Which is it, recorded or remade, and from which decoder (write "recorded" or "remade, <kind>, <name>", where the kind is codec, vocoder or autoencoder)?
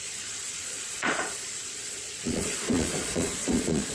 remade, vocoder, Vocos